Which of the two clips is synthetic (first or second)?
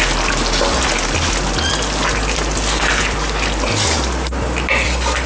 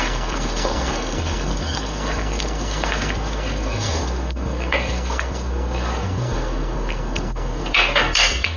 second